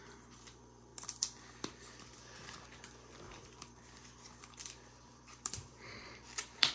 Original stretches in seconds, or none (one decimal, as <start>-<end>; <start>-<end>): 0.9-4.9